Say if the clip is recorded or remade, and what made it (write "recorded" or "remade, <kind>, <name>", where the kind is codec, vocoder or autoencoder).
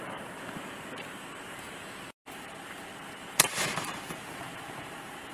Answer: remade, vocoder, BigVGAN v2